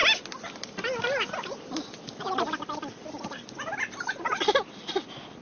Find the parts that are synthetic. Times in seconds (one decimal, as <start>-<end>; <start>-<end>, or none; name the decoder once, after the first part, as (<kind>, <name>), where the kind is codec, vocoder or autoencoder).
none